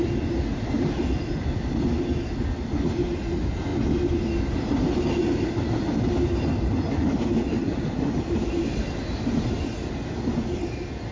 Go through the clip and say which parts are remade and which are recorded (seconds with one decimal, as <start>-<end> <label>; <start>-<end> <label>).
0.0-11.1 recorded